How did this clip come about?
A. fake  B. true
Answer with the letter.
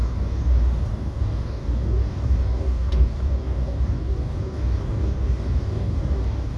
A